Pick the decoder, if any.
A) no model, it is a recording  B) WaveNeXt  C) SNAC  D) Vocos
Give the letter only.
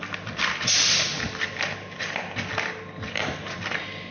A